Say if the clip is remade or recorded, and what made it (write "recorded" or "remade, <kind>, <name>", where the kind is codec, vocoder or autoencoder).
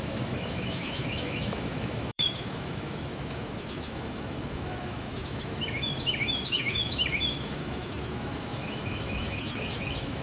remade, autoencoder, DAC-VAE